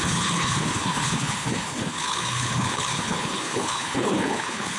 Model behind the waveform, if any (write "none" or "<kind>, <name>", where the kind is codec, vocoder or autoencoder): codec, HILCodec